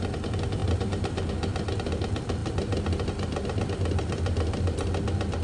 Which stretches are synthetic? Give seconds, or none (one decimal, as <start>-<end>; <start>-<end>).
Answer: 0.6-1.3